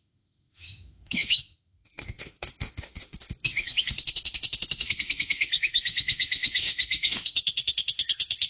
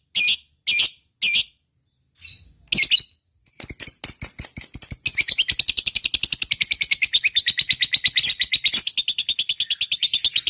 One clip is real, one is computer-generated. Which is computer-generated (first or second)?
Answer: first